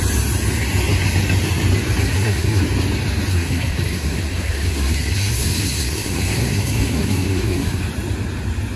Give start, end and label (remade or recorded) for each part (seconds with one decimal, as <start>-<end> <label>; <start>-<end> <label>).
0.0-2.0 recorded; 2.0-2.6 remade; 2.6-3.3 recorded; 3.3-7.8 remade; 7.8-8.8 recorded